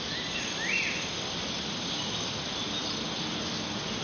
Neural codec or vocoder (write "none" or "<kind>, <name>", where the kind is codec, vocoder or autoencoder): none